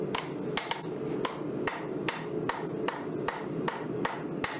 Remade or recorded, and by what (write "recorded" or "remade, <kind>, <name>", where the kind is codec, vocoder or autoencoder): recorded